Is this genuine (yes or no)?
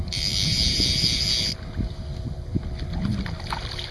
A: yes